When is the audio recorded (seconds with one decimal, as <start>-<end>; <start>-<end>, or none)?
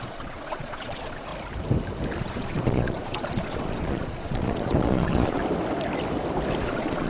1.3-2.2; 5.4-6.6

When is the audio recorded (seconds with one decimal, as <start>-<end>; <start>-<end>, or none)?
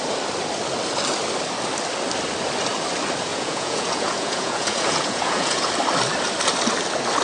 0.0-3.3; 5.7-7.2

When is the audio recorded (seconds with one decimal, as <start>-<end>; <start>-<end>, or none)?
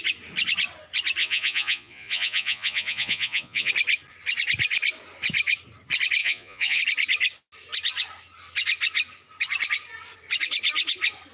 0.0-1.2; 3.7-6.2; 6.8-11.3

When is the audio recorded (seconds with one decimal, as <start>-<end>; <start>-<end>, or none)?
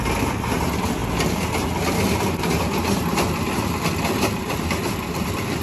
0.0-5.6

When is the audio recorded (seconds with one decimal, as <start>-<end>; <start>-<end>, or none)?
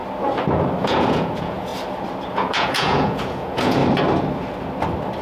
0.0-0.8; 1.7-2.3; 3.8-5.2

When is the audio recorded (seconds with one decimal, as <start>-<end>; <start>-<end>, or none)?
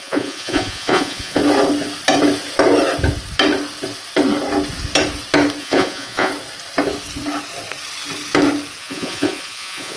1.4-5.6; 6.3-8.8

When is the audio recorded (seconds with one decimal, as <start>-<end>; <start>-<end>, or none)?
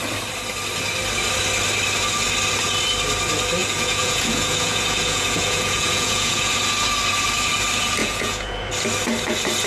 0.0-3.6; 6.5-8.0; 8.7-9.7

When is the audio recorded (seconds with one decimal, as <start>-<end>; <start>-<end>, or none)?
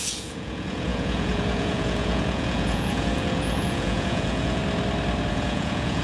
4.6-5.3